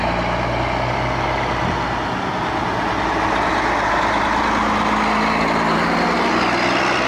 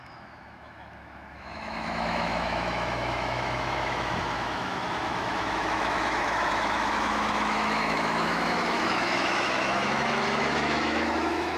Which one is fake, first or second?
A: second